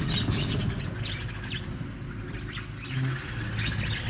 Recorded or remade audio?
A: recorded